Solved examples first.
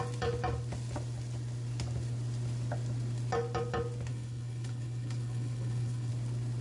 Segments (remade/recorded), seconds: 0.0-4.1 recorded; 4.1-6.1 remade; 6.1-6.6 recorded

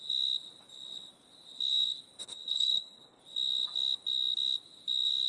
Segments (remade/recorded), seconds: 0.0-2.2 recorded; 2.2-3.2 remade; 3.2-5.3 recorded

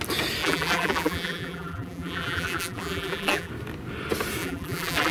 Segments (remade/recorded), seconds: 0.0-0.4 recorded; 0.4-3.5 remade; 3.5-4.4 recorded; 4.4-5.1 remade

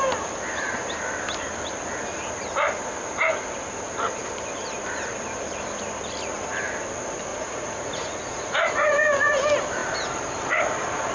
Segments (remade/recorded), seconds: 0.0-7.3 recorded; 7.3-9.4 remade; 9.4-11.1 recorded